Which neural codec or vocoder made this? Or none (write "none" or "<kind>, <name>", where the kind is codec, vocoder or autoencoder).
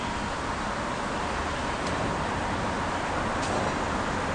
none